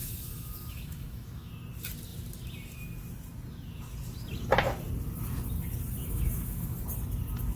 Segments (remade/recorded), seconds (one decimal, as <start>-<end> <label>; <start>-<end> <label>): 0.0-1.5 remade; 1.5-6.0 recorded; 6.0-6.8 remade; 6.8-7.6 recorded

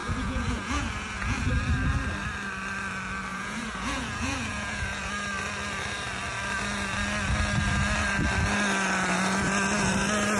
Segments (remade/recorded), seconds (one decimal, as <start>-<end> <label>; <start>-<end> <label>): 0.0-1.5 remade; 1.5-3.3 recorded; 3.3-5.1 remade; 5.1-10.4 recorded

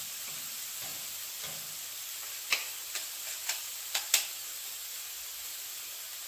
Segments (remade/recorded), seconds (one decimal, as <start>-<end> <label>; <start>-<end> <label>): 0.0-2.8 recorded; 2.8-3.7 remade; 3.7-6.3 recorded